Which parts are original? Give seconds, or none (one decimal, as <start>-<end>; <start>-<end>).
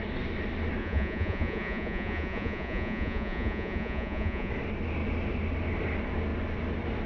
0.0-0.8; 4.5-7.1